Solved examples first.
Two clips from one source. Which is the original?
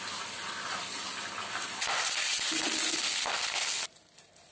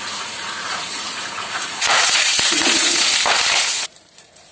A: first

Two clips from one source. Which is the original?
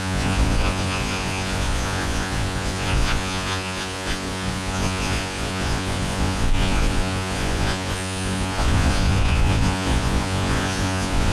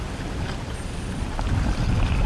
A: second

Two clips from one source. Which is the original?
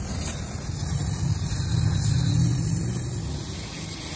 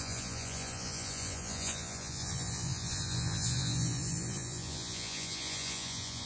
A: first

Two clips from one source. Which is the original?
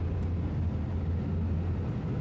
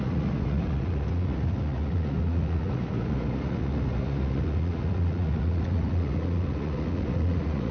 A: first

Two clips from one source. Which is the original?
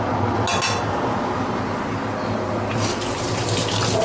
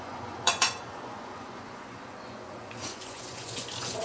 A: first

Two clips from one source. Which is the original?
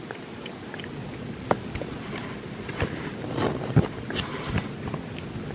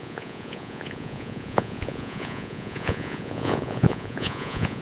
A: first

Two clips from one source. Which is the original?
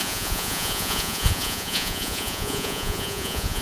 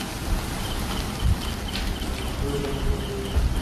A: second